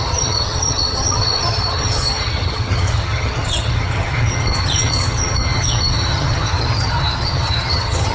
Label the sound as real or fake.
fake